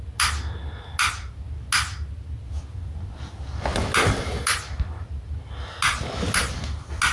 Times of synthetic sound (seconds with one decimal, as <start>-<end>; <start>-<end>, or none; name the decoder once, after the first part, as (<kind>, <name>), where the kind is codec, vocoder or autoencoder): none